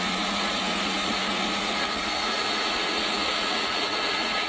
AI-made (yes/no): yes